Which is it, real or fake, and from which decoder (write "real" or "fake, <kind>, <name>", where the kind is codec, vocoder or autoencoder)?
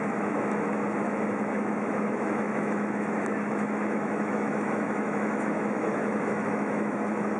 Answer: fake, autoencoder, DAC-VAE